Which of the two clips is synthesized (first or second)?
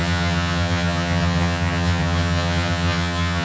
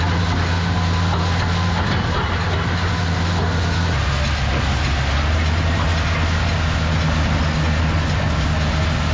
first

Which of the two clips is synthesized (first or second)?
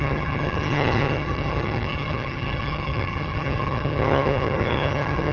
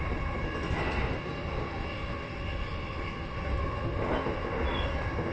first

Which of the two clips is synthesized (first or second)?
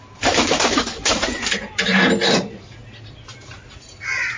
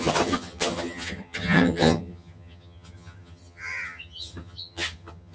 second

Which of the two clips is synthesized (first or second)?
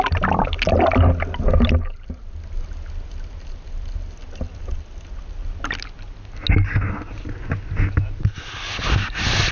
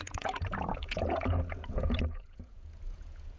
second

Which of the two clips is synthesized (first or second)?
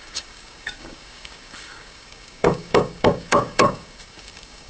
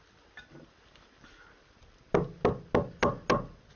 first